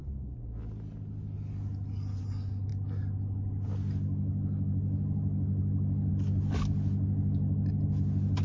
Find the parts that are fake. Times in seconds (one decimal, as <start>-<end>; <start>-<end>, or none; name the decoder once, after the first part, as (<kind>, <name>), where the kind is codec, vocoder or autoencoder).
none